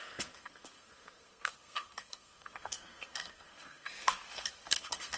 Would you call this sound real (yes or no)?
no